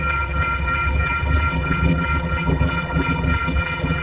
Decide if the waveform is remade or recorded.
remade